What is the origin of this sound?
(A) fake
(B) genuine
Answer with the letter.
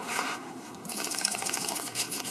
A